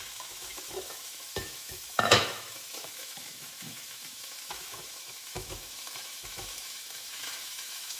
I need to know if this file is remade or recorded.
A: remade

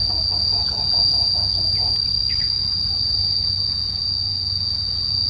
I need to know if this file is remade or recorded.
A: recorded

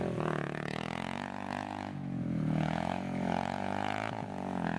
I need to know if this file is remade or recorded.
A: remade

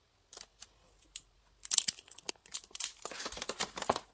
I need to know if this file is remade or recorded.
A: recorded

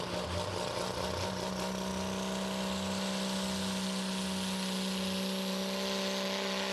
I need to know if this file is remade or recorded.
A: recorded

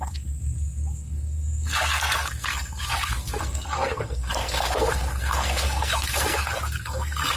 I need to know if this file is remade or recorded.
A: remade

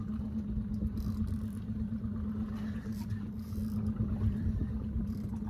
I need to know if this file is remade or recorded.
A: recorded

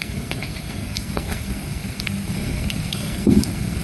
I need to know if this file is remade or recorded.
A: remade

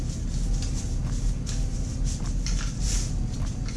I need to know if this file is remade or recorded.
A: recorded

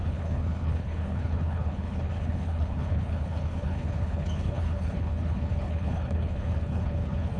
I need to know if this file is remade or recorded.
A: remade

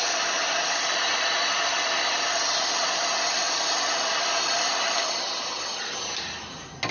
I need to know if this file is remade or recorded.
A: recorded